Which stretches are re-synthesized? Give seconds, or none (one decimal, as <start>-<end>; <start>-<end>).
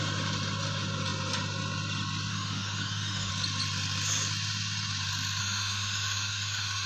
2.3-3.3; 5.4-6.9